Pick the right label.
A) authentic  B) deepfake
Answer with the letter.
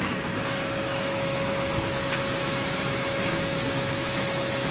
B